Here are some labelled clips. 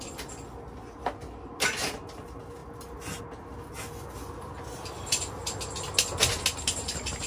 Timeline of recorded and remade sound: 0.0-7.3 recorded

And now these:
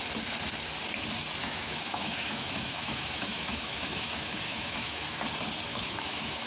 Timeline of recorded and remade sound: 0.0-1.4 recorded; 1.4-5.2 remade; 5.2-5.7 recorded; 5.7-6.5 remade

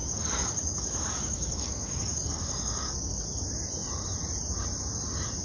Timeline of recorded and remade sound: 0.0-3.2 remade; 3.2-5.4 recorded

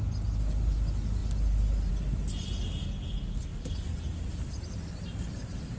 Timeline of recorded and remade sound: 0.0-5.8 recorded

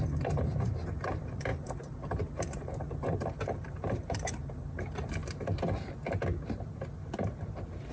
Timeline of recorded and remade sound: 0.0-5.2 remade; 5.2-7.9 recorded

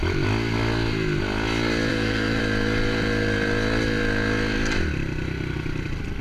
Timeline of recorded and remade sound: 0.0-1.9 recorded; 1.9-2.4 remade; 2.4-6.2 recorded